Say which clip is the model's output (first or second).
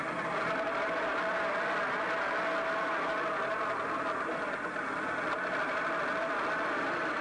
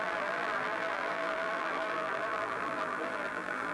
second